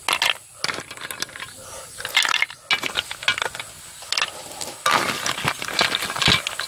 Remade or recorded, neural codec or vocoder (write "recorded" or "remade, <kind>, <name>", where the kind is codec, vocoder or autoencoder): recorded